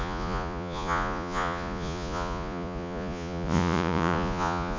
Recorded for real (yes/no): no